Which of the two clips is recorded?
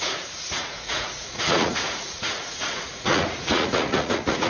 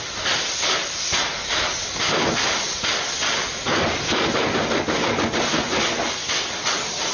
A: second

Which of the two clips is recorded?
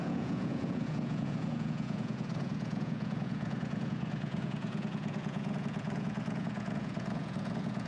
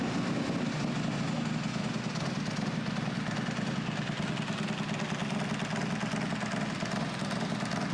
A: second